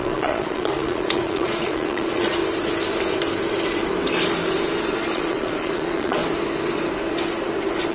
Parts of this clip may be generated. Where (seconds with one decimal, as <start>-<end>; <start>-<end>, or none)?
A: 0.0-2.4; 4.9-6.2